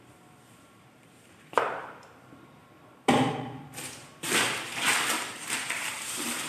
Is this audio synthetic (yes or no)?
yes